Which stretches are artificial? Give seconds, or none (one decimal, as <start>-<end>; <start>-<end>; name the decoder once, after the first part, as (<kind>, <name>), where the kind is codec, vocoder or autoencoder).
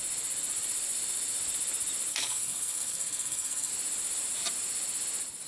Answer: 2.1-3.7 (codec, SNAC)